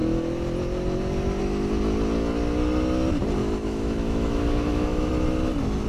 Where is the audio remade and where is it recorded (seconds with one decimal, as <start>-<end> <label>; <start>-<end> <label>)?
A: 0.0-3.4 recorded; 3.4-5.1 remade; 5.1-5.9 recorded